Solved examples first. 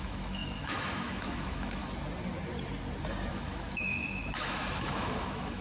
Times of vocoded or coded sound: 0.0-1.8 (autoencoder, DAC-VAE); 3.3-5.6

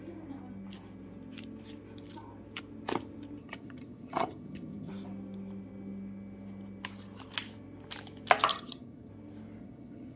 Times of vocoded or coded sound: 3.4-4.9 (vocoder, HiFi-GAN); 8.5-9.1; 9.6-10.2

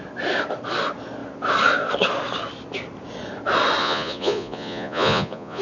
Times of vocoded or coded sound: 3.8-5.6 (vocoder, Vocos)

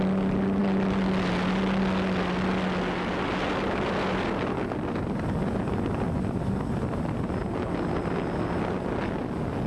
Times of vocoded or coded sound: none

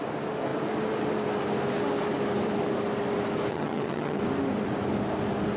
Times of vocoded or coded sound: 3.5-4.2 (vocoder, HiFi-GAN)

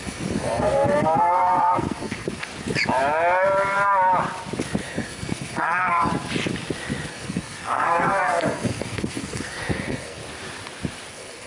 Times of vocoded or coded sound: 0.0-2.5 (codec, SNAC); 4.8-6.1; 7.1-10.2; 11.1-11.5